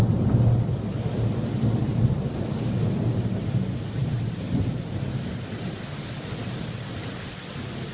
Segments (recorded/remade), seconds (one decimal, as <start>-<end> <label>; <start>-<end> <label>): 0.0-4.5 recorded; 4.5-6.0 remade; 6.0-7.9 recorded